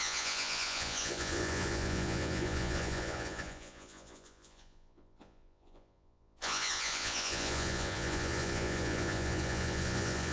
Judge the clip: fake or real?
fake